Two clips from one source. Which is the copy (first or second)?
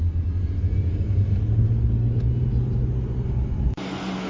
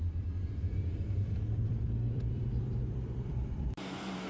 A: second